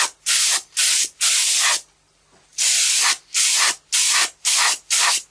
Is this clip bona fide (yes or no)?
yes